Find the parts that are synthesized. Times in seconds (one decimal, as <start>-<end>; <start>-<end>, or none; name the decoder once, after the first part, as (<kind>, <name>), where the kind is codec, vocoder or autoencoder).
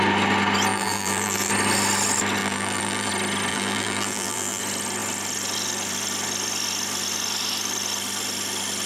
0.7-1.5 (vocoder, BigVGAN v2); 2.4-3.1; 3.5-4.6